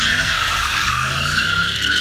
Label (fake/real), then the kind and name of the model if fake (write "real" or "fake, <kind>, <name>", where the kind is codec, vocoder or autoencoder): fake, codec, SNAC